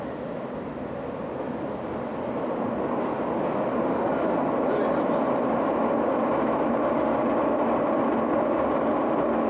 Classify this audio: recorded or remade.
recorded